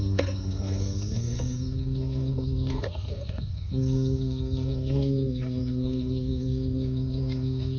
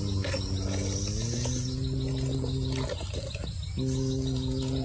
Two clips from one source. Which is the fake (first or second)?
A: first